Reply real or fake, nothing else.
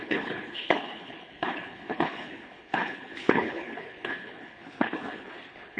fake